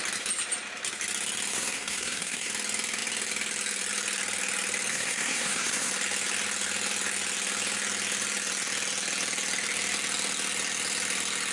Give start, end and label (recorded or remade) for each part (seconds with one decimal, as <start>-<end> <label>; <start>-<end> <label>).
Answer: 0.0-1.5 recorded; 1.5-2.5 remade; 2.5-4.9 recorded; 4.9-5.9 remade; 5.9-11.5 recorded